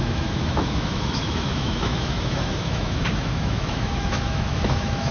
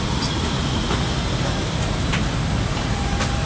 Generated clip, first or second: first